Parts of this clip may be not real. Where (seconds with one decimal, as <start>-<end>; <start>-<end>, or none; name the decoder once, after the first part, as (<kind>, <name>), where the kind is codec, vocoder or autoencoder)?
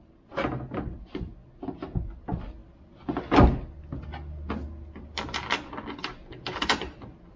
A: none